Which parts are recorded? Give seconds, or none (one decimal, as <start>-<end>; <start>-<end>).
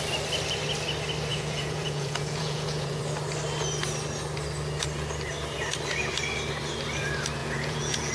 0.0-1.3; 3.0-7.4